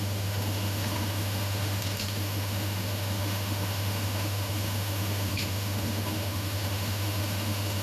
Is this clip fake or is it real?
fake